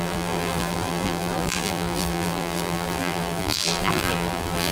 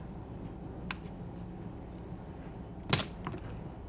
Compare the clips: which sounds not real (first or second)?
first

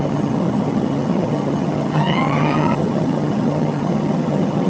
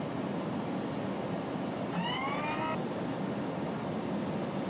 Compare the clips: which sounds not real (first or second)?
first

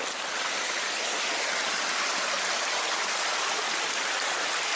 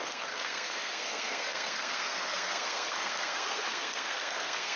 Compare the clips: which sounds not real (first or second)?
second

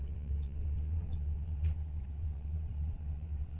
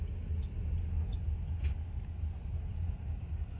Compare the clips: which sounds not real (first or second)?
first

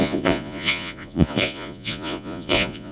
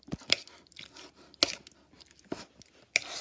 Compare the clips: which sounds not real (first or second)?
first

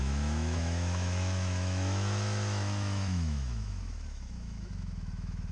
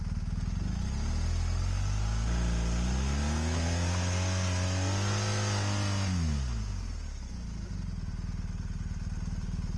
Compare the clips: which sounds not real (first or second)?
first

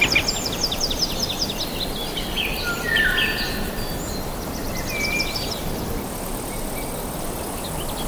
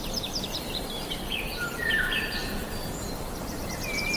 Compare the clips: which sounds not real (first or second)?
second